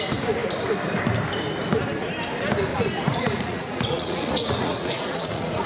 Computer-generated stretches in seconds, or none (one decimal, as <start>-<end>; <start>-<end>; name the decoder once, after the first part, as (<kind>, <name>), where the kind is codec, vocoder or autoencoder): 2.7-5.7 (vocoder, Vocos)